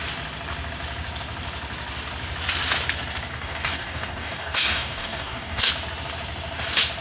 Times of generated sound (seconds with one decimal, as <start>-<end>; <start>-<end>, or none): 3.3-5.7